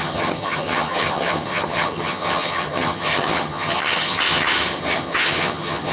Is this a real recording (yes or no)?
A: no